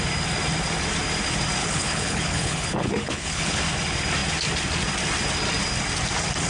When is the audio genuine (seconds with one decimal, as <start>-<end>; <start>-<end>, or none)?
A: 0.0-1.6; 3.6-6.5